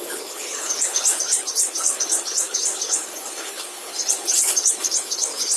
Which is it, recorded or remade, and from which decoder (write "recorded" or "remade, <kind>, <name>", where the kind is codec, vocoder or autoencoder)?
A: remade, codec, HILCodec